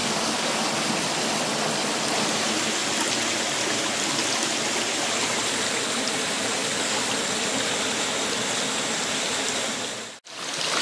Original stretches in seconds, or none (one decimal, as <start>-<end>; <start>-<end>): 0.6-6.6; 7.1-10.8